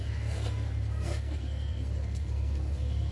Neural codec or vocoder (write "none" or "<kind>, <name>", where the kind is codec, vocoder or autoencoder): codec, SNAC